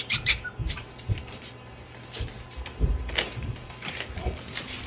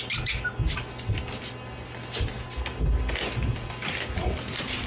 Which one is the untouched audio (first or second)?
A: second